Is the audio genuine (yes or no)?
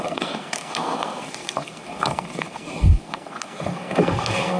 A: no